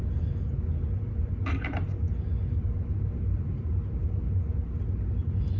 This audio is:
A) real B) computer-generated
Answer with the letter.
A